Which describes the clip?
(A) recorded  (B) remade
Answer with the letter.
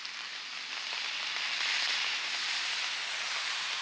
A